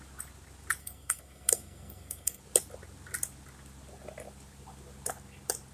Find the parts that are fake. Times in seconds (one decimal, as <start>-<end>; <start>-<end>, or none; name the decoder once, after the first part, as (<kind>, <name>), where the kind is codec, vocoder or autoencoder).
0.8-2.4 (codec, SNAC)